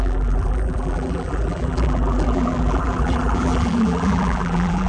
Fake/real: fake